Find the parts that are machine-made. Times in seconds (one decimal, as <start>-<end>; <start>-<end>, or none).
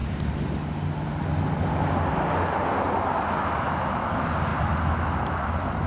none